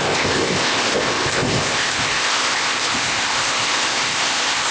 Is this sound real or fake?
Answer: fake